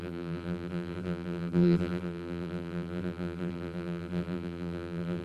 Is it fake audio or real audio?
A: fake